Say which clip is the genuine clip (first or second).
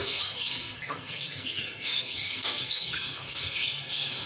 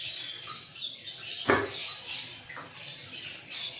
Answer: second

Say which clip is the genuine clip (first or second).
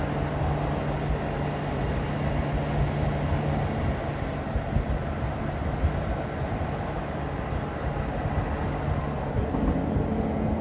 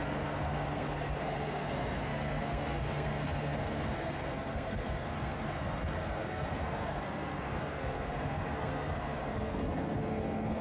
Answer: first